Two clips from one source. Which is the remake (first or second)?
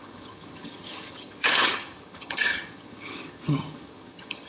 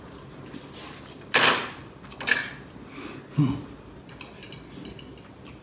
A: first